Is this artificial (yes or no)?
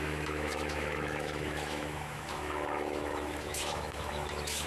yes